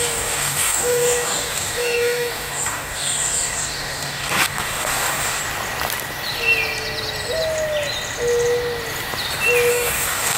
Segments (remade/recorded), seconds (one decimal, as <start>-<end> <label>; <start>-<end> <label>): 0.0-5.4 remade; 5.4-9.7 recorded; 9.7-10.4 remade